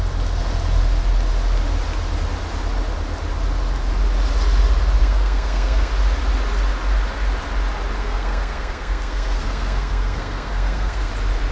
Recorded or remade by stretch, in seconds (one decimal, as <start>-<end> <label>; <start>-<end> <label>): 0.0-5.0 recorded; 5.0-5.9 remade; 5.9-8.0 recorded; 8.0-11.1 remade; 11.1-11.5 recorded